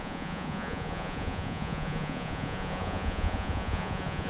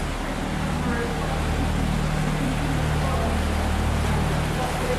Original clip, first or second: second